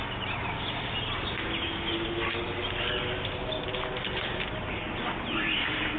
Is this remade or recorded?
remade